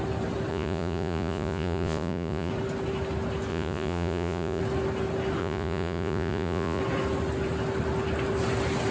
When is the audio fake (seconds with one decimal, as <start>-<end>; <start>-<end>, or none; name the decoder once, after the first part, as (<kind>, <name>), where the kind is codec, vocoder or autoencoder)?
0.5-2.5 (vocoder, Vocos); 3.5-4.6; 5.4-6.8